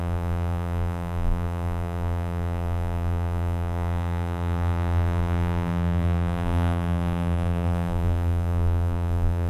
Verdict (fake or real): fake